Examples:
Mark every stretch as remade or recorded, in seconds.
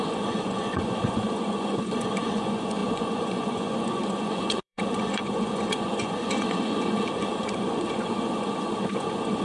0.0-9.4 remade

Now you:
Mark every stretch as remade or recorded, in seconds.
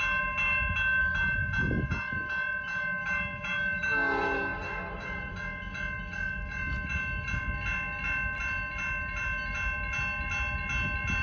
0.0-4.5 recorded; 4.5-5.3 remade; 5.3-11.2 recorded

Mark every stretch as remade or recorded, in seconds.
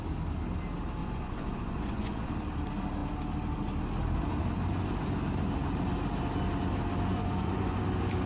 0.0-1.0 recorded; 1.0-2.3 remade; 2.3-7.1 recorded; 7.1-7.8 remade; 7.8-8.3 recorded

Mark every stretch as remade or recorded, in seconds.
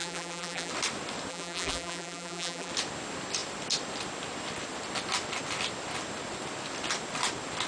0.0-0.7 remade; 0.7-1.3 recorded; 1.3-2.7 remade; 2.7-7.7 recorded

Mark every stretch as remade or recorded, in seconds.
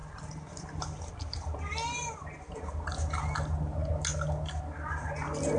0.0-5.6 recorded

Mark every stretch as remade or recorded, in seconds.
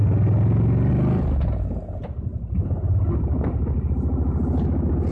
0.0-5.1 recorded